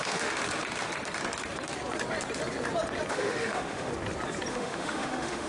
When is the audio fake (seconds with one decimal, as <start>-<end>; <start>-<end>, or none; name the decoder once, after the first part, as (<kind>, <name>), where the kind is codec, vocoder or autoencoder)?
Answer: 0.0-0.4 (autoencoder, DAC-VAE); 3.1-3.9; 4.5-5.5